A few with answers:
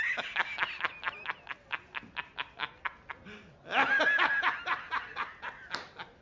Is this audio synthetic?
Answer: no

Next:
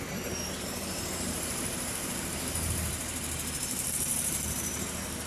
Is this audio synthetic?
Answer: yes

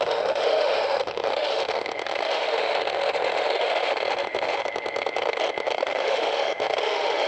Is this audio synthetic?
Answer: yes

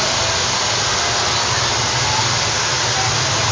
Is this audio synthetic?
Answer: no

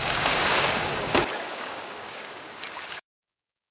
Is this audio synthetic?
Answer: yes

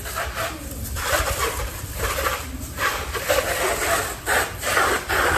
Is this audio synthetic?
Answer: yes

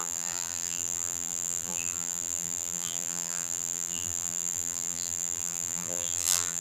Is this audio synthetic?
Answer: yes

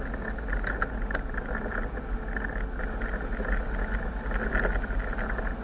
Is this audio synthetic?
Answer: no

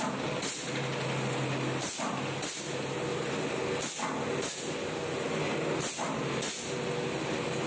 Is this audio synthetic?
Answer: no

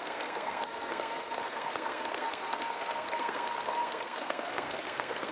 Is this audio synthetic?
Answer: yes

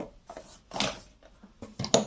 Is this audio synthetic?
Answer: no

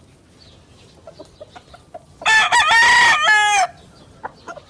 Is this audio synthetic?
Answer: no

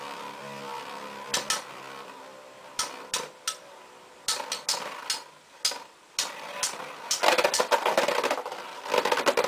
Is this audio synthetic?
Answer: no